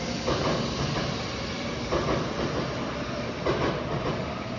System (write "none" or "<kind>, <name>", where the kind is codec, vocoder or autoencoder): none